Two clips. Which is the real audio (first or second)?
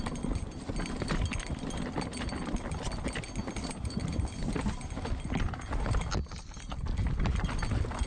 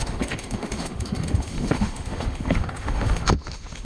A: first